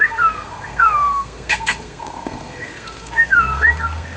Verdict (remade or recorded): remade